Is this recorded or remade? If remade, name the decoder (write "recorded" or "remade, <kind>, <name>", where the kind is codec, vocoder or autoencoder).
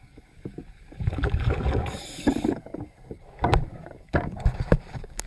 remade, codec, DAC